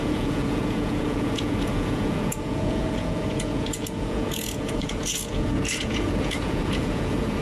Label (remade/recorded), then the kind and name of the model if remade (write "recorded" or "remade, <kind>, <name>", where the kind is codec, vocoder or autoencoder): remade, vocoder, Vocos